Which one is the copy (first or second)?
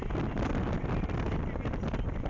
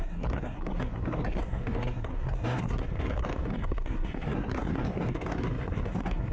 second